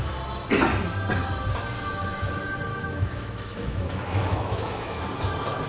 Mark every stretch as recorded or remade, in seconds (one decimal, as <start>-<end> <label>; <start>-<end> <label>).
0.0-2.7 recorded; 2.7-5.0 remade; 5.0-5.7 recorded